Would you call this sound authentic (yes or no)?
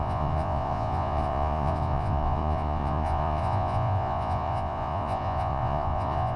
no